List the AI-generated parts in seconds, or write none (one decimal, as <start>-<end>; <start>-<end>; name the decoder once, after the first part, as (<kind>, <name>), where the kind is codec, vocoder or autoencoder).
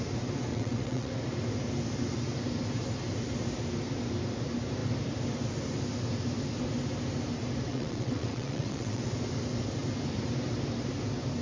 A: 0.5-1.1 (vocoder, WaveNeXt); 7.7-9.0